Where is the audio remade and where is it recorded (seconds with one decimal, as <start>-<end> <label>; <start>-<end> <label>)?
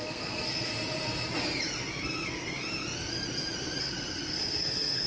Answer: 0.0-0.7 remade; 0.7-3.8 recorded; 3.8-5.1 remade